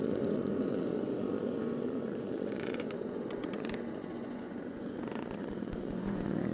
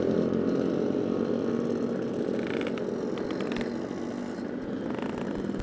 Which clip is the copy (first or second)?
first